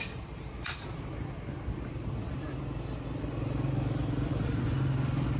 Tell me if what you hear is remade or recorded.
recorded